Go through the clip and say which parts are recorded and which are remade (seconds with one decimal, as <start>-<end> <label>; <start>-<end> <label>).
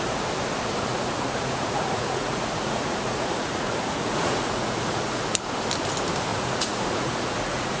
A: 0.0-0.9 recorded; 0.9-5.2 remade; 5.2-6.3 recorded; 6.3-7.8 remade